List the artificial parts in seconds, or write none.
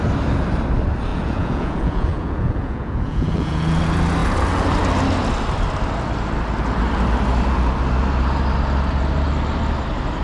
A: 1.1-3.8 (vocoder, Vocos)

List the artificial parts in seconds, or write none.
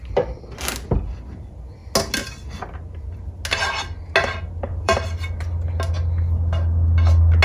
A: 4.7-5.4 (vocoder, BigVGAN v2)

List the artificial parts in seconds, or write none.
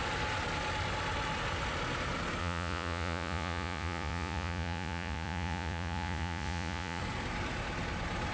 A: 2.4-7.0 (vocoder, Vocos)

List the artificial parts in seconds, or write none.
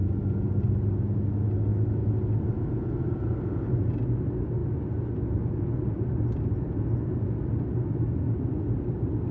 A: none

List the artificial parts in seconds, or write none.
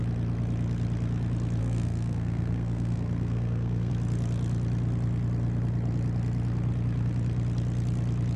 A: 1.6-3.9 (codec, SNAC)